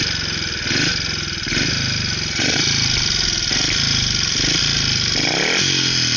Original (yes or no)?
yes